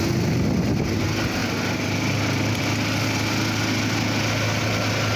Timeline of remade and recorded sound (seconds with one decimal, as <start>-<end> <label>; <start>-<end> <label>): 0.0-5.2 recorded